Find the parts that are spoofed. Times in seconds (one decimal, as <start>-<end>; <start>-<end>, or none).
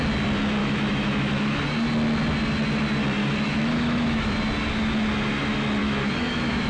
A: 0.6-1.6; 3.2-4.3; 5.8-6.7